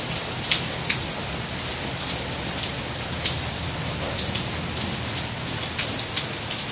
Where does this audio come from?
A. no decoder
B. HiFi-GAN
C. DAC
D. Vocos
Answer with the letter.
A